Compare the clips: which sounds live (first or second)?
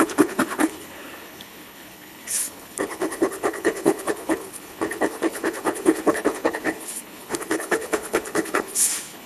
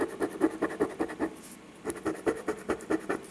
second